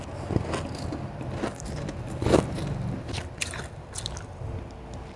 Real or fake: real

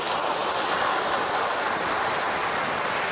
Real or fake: real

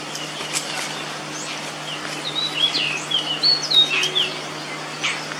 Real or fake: real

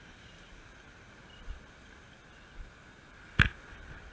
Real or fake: real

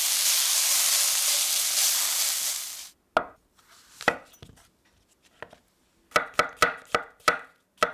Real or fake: real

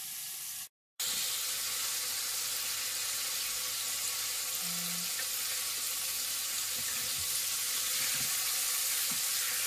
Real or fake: real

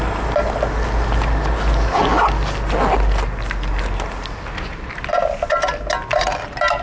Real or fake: real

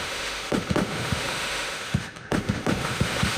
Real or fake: fake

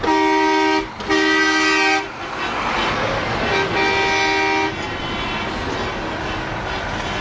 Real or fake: real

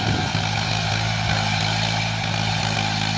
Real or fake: real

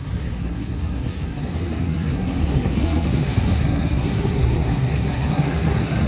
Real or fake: fake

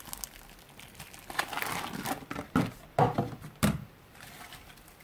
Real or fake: fake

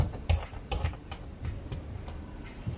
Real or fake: real